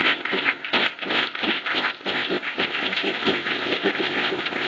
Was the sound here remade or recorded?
remade